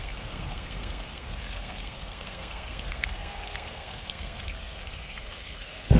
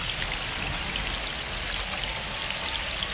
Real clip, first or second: second